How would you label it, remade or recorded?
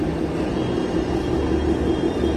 recorded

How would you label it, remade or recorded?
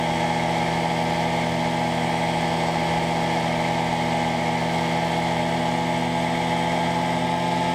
recorded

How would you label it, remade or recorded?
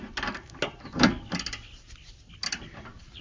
recorded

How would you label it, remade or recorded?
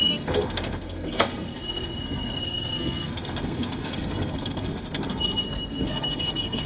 remade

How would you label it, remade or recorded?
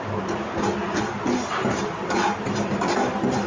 recorded